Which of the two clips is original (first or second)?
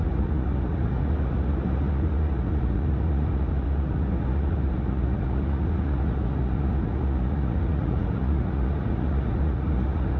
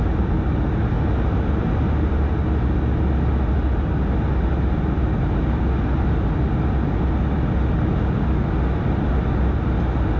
second